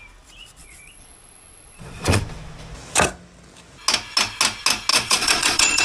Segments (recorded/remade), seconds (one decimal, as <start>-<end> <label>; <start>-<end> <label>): 0.0-0.6 recorded; 0.6-2.2 remade; 2.2-4.9 recorded; 4.9-5.8 remade